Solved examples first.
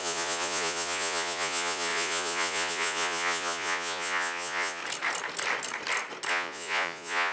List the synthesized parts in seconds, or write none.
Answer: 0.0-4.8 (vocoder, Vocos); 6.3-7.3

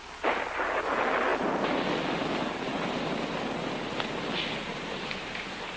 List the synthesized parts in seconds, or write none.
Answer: 4.7-5.8 (vocoder, BigVGAN v2)

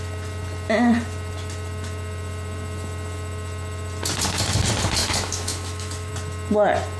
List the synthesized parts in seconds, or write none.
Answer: 5.0-6.1 (autoencoder, DAC-VAE)

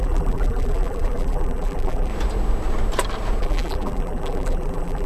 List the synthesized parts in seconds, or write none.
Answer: 0.0-2.1 (vocoder, BigVGAN v2); 3.4-5.1

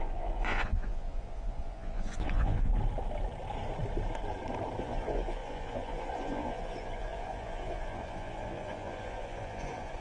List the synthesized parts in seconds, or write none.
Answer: 0.0-2.7 (vocoder, Vocos); 4.8-10.0

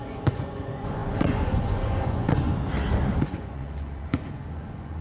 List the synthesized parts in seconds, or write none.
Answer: 0.0-2.5 (vocoder, Vocos); 3.1-5.0